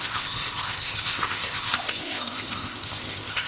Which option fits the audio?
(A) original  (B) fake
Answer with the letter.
B